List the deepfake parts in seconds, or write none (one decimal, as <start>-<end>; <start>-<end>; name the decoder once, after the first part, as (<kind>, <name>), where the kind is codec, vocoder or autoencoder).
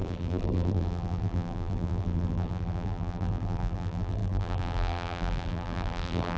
0.0-6.4 (vocoder, BigVGAN v2)